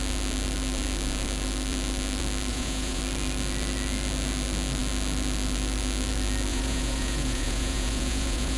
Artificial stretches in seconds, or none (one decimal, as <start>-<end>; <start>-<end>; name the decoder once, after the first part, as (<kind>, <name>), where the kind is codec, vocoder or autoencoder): 2.5-3.0 (vocoder, Vocos); 6.5-8.6